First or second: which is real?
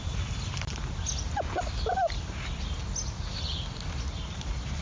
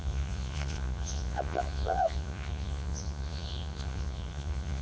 first